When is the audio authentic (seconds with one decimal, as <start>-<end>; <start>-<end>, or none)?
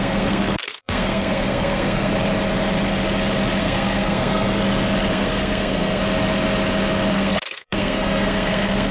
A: 2.1-3.6; 4.6-5.1; 6.0-7.1